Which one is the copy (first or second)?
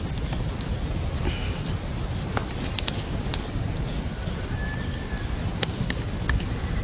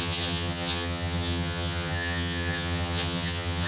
second